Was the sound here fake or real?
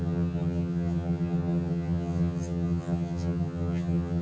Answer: fake